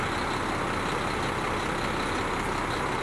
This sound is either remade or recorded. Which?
recorded